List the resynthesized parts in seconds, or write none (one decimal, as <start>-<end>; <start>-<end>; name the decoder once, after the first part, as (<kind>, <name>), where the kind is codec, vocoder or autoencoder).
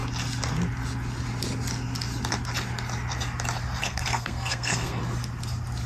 3.8-5.0 (codec, SNAC)